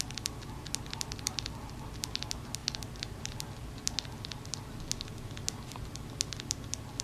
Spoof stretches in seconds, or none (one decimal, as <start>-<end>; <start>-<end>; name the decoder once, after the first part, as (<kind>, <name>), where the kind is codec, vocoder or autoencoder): none